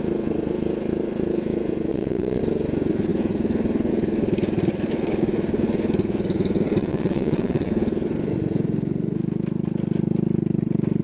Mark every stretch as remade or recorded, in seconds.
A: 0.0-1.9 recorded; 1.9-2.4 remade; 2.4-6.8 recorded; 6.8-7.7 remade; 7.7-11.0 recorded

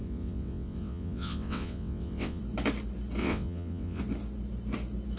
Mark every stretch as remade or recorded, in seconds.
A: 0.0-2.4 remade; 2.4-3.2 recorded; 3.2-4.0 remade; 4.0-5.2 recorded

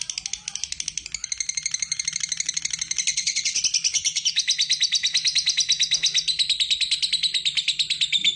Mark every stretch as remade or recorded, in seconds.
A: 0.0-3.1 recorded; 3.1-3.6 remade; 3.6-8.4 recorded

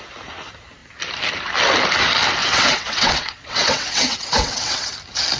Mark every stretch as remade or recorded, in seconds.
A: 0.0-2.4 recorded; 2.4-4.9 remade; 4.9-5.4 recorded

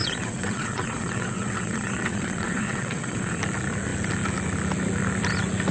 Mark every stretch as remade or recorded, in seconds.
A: 0.0-3.4 remade; 3.4-5.7 recorded

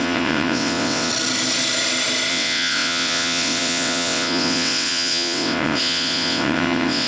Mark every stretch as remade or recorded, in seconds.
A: 0.0-1.1 remade; 1.1-2.3 recorded; 2.3-7.1 remade

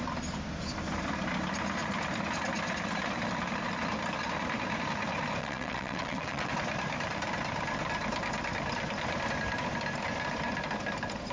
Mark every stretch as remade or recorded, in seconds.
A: 0.0-5.4 recorded; 5.4-6.5 remade; 6.5-11.3 recorded

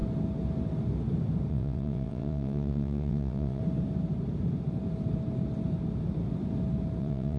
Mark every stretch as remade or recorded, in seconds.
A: 0.0-1.5 recorded; 1.5-3.6 remade; 3.6-7.0 recorded; 7.0-7.4 remade